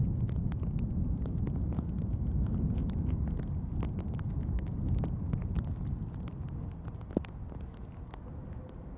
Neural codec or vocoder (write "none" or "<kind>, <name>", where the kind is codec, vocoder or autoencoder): none